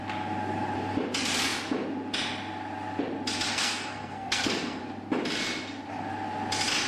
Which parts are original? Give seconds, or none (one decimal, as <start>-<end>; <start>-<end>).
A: 0.0-3.5; 4.8-6.9